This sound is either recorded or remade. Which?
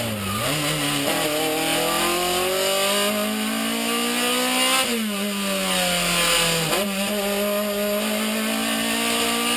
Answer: recorded